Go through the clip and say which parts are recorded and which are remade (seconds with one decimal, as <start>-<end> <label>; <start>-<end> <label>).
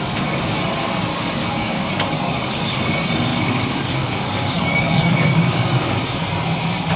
0.0-1.1 recorded; 1.1-2.8 remade; 2.8-3.3 recorded; 3.3-6.0 remade; 6.0-7.0 recorded